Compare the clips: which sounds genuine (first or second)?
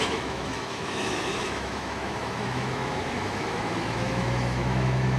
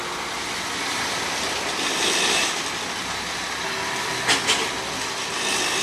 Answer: second